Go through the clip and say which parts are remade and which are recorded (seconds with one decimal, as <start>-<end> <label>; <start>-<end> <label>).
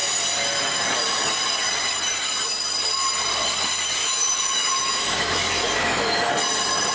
0.0-4.0 recorded; 4.0-6.3 remade; 6.3-6.9 recorded